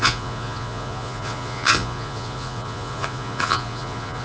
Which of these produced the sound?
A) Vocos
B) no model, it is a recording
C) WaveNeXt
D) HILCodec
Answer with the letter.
A